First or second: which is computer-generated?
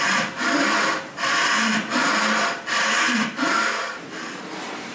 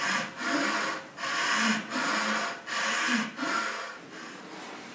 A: first